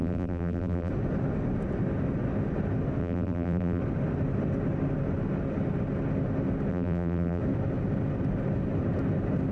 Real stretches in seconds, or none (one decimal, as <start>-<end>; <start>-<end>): 0.9-3.0; 3.8-6.7; 7.4-9.5